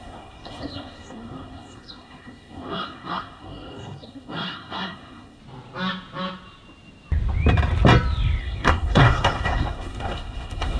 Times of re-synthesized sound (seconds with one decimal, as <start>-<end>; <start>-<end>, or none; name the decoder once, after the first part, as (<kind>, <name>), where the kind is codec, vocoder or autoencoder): 0.0-5.4 (codec, SNAC); 8.4-10.8